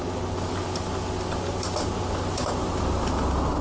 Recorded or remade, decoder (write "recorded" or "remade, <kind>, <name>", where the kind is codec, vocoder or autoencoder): recorded